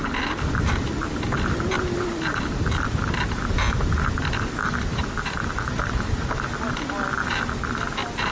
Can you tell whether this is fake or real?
real